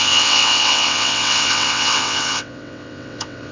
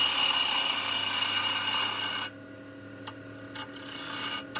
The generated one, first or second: first